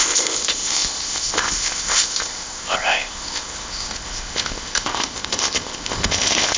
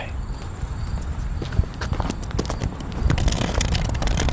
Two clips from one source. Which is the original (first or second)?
second